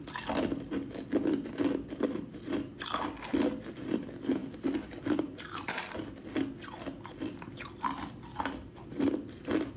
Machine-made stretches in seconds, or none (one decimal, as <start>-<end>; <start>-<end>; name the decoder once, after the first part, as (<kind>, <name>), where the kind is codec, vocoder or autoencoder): none